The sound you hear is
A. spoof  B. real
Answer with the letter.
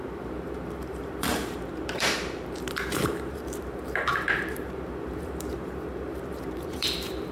A